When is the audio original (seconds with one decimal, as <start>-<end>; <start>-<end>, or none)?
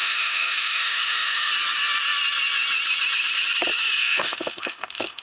1.5-4.0